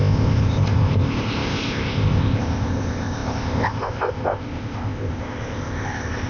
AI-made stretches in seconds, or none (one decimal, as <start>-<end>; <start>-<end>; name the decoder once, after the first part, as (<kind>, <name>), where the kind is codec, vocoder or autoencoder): 0.0-6.3 (codec, ZipCodec)